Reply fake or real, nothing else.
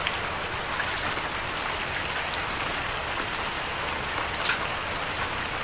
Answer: real